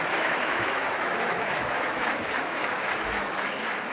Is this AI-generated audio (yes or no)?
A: yes